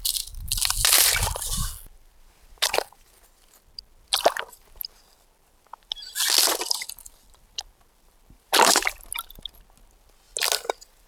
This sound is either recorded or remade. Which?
recorded